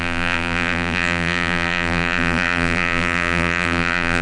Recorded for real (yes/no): no